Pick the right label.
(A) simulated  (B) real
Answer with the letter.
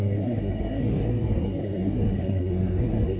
A